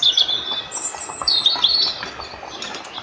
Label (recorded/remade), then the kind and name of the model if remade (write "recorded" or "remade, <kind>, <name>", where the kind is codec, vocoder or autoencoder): recorded